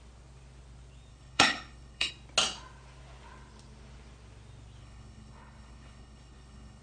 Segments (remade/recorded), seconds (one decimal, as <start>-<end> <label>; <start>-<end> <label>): 0.0-1.1 recorded; 1.1-2.1 remade; 2.1-4.8 recorded; 4.8-6.8 remade